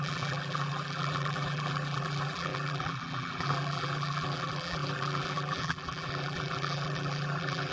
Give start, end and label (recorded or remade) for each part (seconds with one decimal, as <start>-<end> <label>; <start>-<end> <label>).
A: 0.0-7.7 remade